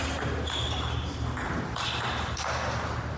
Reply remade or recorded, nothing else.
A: recorded